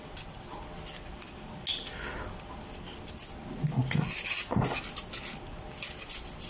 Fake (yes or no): no